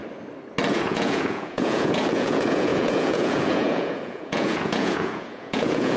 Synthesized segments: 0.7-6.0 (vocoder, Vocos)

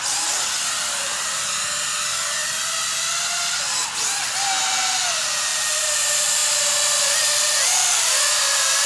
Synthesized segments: 5.5-6.0 (vocoder, BigVGAN v2)

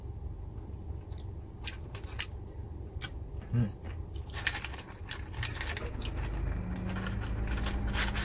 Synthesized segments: 1.8-3.0 (vocoder, BigVGAN v2)